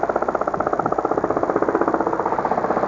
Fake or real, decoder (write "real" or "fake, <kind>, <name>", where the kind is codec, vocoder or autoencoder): fake, vocoder, BigVGAN v2